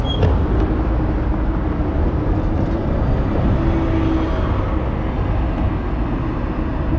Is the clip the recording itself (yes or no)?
yes